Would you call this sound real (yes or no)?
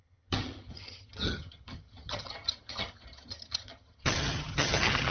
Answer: no